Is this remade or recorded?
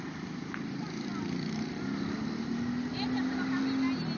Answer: recorded